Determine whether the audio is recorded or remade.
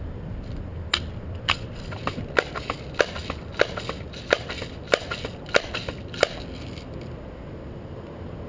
recorded